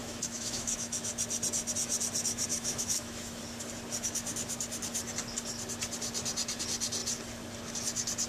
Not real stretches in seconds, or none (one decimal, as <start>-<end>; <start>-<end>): 0.0-1.1; 2.5-3.4

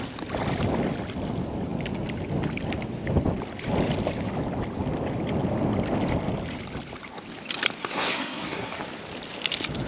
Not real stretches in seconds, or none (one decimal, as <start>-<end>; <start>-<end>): 7.8-8.8

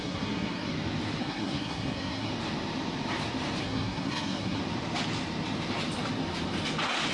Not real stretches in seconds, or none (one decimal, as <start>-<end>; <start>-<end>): 0.0-0.7; 1.2-2.3; 3.6-4.6